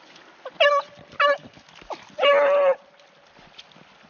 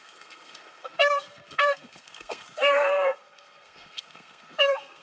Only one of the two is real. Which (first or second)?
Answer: first